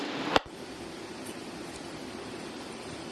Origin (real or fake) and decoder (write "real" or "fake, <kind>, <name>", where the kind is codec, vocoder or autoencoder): real